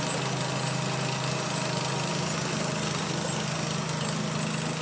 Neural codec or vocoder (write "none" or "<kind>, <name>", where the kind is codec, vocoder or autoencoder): none